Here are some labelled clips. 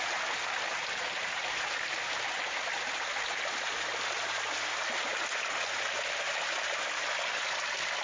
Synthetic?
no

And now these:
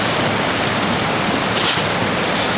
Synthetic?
no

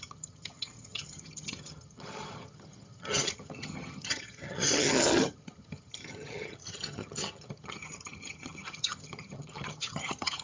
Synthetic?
yes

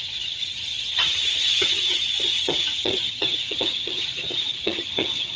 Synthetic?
yes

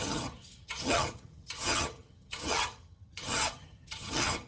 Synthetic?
yes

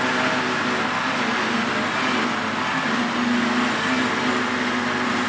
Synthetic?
no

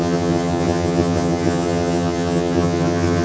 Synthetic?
yes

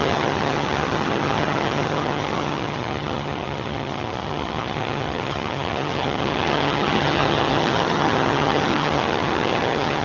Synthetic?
yes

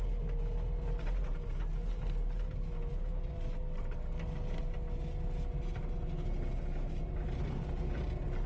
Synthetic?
no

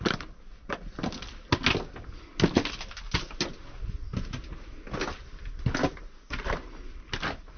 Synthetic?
no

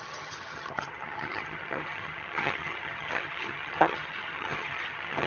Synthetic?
yes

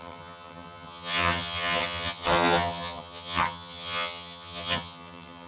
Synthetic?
yes